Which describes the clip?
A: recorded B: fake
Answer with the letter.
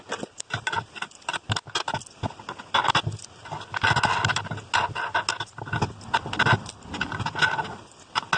A